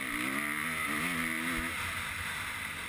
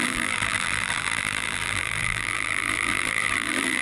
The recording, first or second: first